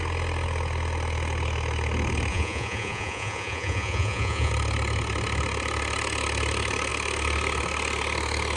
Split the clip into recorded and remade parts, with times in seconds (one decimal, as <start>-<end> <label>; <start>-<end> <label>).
0.0-2.3 recorded; 2.3-4.5 remade; 4.5-8.6 recorded